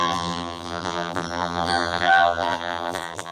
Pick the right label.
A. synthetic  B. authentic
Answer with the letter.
A